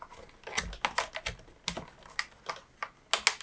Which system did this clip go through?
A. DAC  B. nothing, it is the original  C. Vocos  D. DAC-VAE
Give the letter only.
B